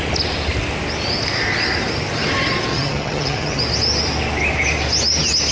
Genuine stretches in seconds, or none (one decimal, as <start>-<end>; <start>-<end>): 0.0-2.7; 3.6-5.5